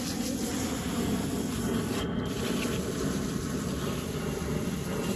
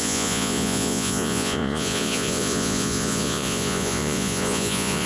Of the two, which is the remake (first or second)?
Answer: second